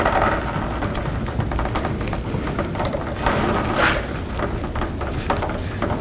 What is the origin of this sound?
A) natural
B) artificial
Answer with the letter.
A